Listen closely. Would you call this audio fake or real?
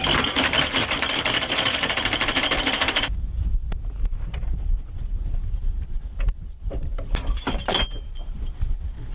fake